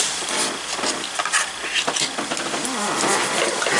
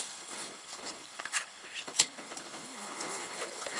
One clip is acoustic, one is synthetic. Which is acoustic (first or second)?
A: first